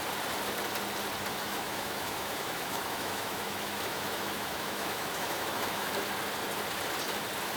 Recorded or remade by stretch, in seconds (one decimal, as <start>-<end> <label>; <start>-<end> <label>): 0.0-1.3 recorded; 1.3-5.9 remade; 5.9-7.6 recorded